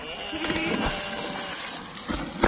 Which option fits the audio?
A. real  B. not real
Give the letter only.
A